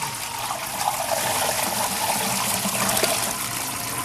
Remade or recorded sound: recorded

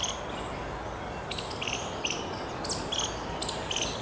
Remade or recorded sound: recorded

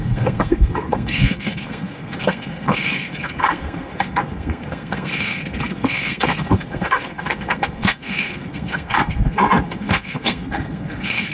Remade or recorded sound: remade